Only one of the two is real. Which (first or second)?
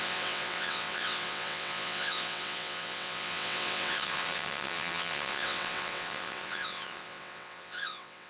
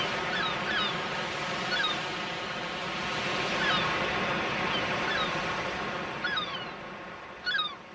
second